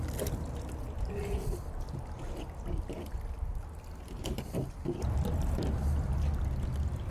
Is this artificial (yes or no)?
no